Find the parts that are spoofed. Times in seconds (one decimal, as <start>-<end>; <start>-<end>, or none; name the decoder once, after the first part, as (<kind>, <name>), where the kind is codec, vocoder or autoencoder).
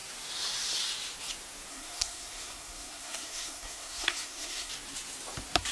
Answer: 1.7-4.7 (codec, SNAC)